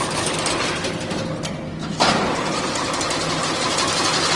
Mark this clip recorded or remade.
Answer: recorded